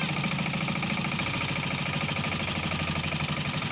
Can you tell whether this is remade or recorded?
recorded